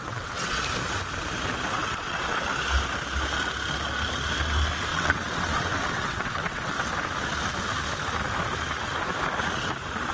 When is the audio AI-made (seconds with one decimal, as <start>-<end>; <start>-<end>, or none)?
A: 0.0-0.6; 1.8-2.4; 4.9-6.9